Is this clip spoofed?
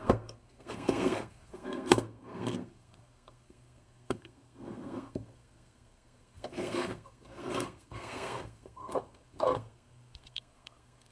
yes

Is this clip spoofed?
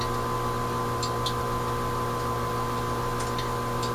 no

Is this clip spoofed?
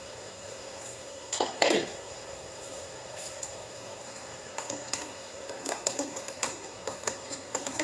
yes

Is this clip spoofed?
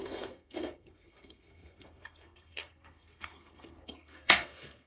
yes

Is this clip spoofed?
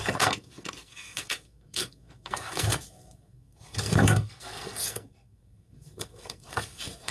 yes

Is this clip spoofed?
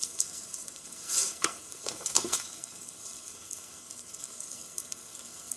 yes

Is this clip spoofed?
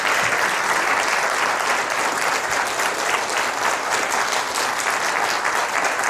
no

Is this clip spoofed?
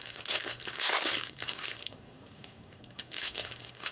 yes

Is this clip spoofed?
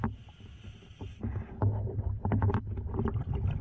no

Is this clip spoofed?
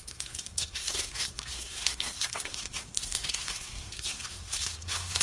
yes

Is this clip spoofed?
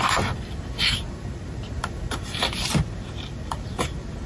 no